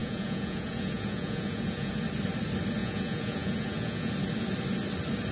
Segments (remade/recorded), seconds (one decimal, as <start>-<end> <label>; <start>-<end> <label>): 0.0-1.9 remade; 1.9-2.8 recorded; 2.8-4.1 remade; 4.1-5.3 recorded